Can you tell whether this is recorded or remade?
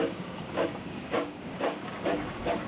remade